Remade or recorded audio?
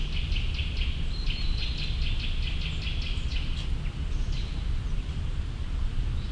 recorded